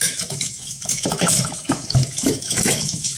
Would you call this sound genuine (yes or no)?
no